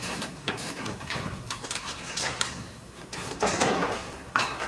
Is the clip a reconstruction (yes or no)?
yes